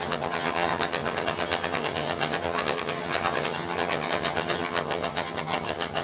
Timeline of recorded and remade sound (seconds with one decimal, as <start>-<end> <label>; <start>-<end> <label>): 0.0-6.0 remade